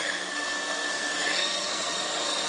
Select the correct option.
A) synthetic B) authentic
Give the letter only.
A